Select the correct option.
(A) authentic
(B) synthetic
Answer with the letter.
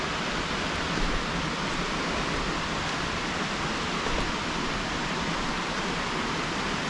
A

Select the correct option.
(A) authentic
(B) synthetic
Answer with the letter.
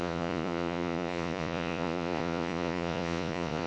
B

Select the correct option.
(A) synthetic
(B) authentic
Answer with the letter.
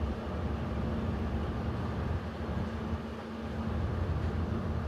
B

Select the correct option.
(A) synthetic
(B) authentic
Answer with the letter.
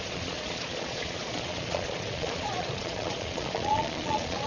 A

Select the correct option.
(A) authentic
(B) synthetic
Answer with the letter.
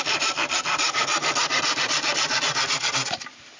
A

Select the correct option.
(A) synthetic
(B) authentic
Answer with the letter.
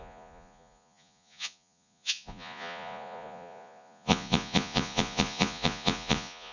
A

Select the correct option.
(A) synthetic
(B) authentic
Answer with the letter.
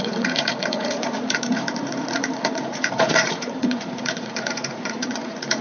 A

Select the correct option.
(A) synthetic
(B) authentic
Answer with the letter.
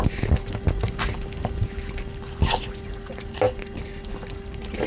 B